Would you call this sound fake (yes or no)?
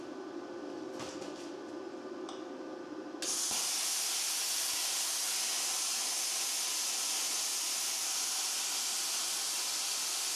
no